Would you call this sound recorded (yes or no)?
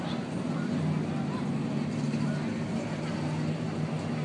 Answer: yes